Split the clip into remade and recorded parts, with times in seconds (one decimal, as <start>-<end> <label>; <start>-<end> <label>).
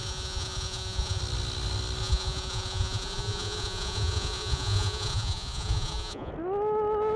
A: 0.0-1.2 remade; 1.2-2.0 recorded; 2.0-6.3 remade; 6.3-7.2 recorded